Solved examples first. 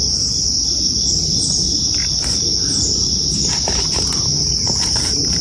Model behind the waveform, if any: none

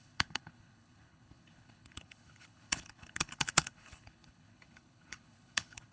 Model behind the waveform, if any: codec, HILCodec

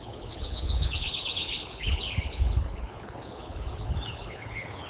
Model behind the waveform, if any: codec, HILCodec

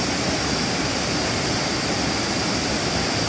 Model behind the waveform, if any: none